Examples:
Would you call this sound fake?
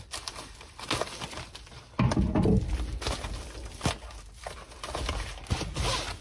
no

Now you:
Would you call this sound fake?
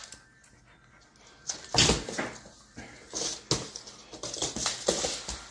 no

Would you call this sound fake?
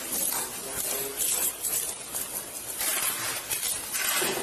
no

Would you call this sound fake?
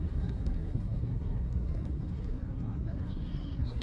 yes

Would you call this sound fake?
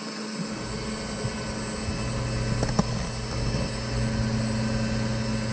no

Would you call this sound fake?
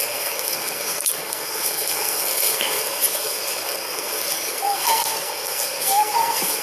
yes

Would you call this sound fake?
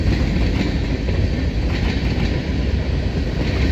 no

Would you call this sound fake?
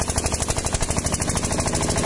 no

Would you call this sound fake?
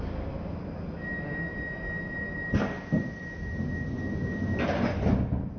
no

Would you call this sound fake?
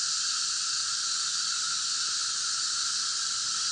no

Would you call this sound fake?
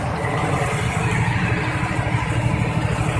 no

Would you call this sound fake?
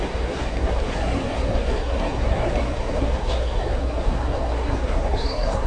yes